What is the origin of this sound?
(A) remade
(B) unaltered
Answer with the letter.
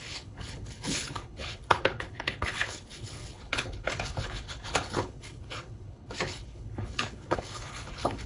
A